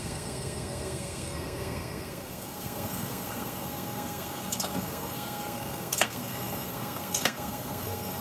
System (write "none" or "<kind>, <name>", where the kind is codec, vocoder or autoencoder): codec, SNAC